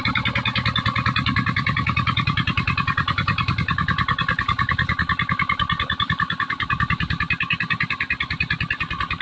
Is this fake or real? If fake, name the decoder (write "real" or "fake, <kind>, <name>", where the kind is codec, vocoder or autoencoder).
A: real